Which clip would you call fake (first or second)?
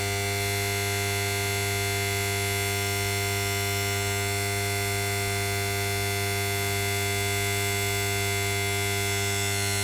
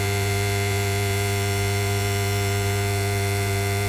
second